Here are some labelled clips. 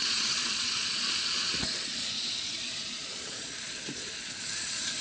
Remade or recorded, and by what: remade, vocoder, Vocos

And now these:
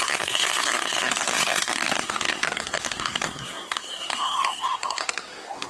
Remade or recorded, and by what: remade, codec, SNAC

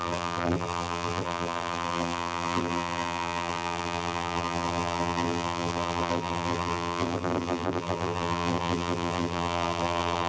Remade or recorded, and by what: remade, vocoder, BigVGAN v2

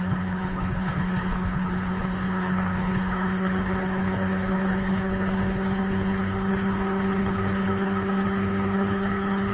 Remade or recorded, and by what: remade, codec, HILCodec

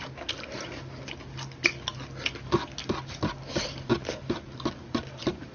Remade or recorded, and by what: recorded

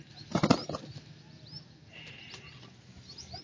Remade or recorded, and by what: recorded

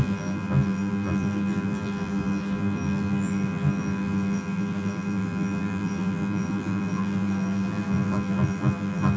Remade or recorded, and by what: remade, vocoder, BigVGAN v2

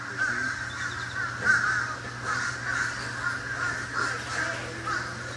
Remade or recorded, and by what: recorded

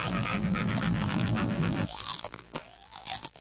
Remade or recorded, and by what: remade, vocoder, BigVGAN v2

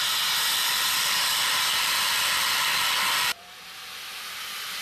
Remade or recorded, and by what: recorded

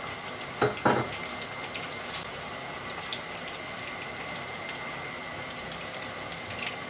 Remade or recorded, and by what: recorded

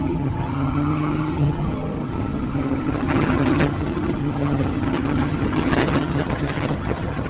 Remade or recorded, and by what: remade, vocoder, HiFi-GAN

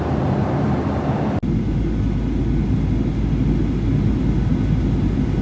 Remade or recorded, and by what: recorded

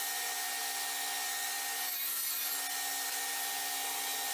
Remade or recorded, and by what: recorded